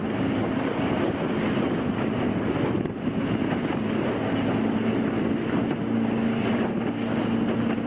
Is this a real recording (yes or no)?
yes